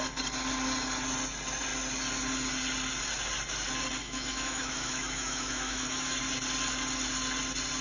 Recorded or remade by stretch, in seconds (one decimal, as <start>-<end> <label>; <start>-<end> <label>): 0.0-4.0 recorded; 4.0-6.2 remade; 6.2-7.8 recorded